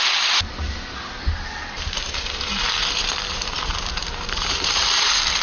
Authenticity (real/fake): fake